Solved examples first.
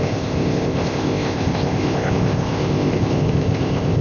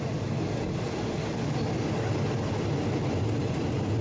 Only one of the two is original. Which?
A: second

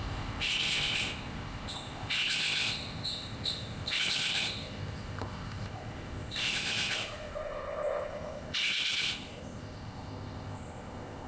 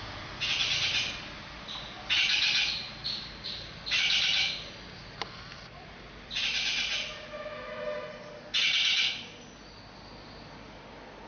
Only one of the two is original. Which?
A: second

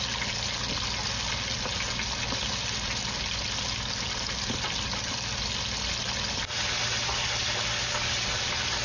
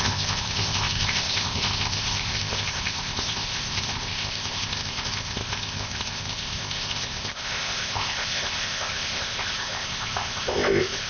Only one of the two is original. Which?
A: first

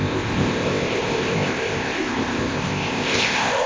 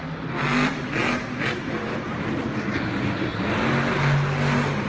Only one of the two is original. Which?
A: second